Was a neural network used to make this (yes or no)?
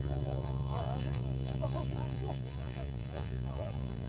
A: yes